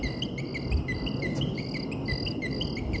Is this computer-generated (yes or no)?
no